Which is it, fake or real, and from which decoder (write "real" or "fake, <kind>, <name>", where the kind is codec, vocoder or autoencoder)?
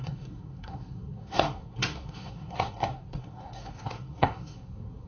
fake, codec, SNAC